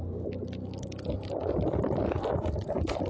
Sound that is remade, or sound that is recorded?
recorded